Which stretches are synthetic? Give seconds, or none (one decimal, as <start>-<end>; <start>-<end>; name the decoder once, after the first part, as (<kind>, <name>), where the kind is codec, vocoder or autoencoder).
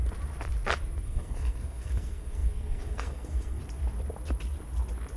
1.0-3.6 (codec, SNAC)